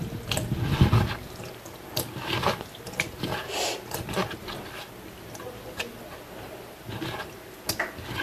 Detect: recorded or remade recorded